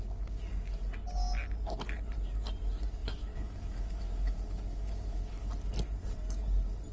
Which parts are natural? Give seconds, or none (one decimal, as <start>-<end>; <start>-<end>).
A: 0.0-3.0; 5.5-6.9